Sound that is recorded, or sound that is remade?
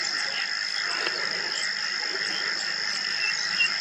recorded